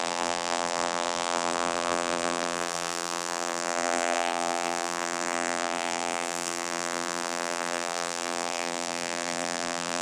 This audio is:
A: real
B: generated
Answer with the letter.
B